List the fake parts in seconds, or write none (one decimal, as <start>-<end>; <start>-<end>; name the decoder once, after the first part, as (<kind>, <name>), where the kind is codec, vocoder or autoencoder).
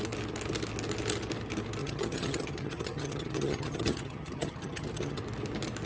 1.8-5.2 (vocoder, HiFi-GAN)